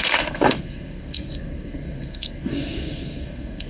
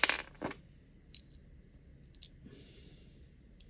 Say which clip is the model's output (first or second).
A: first